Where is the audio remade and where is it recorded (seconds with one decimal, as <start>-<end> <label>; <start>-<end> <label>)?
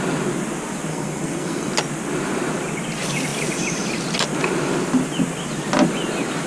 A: 0.0-0.9 recorded; 0.9-1.7 remade; 1.7-6.5 recorded